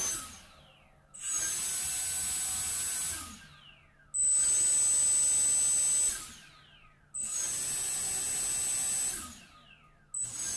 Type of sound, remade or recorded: recorded